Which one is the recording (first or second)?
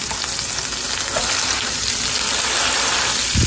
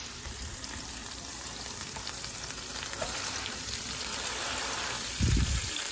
first